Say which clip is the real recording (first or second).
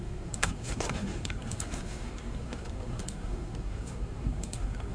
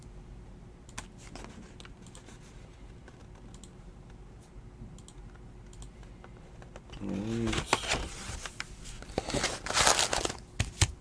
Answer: second